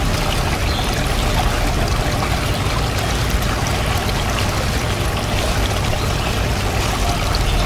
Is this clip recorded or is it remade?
recorded